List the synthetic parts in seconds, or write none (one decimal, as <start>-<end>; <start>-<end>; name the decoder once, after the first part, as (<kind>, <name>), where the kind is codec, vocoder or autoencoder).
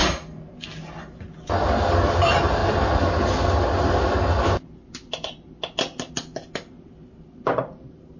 none